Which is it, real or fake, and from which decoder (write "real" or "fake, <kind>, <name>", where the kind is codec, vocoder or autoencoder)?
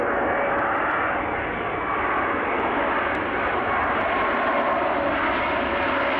real